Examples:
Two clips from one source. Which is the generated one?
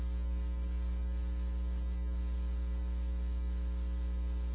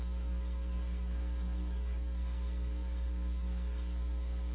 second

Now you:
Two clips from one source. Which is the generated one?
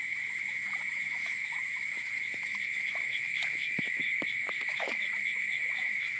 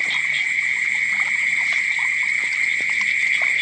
first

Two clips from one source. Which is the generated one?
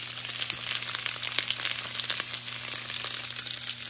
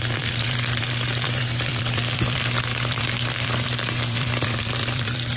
second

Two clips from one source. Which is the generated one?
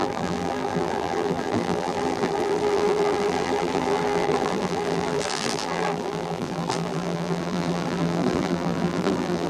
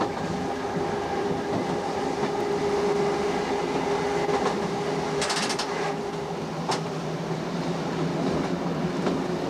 first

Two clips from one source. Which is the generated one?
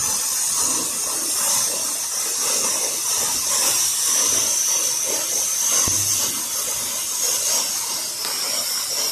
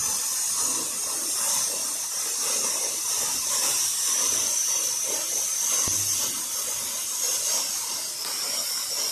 second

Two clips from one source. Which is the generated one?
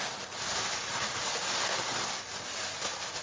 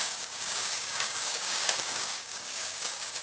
second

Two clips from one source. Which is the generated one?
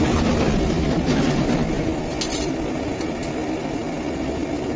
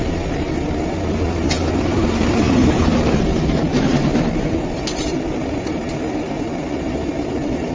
second